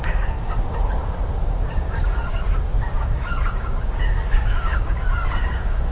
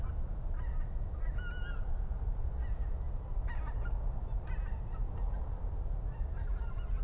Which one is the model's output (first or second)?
first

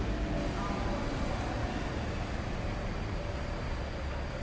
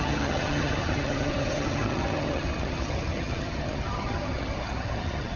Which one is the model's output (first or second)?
second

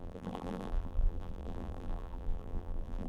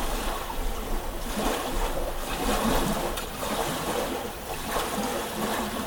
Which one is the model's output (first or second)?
first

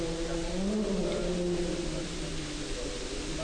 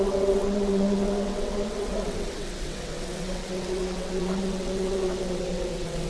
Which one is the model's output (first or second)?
second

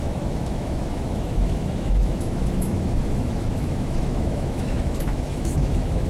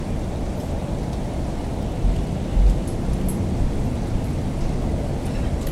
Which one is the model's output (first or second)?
first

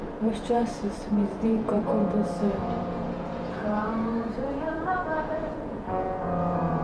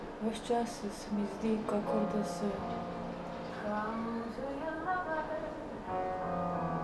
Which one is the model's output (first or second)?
first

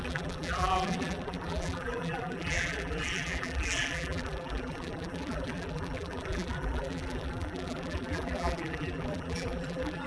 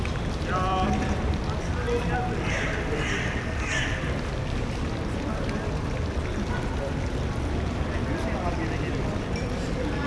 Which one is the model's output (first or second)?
first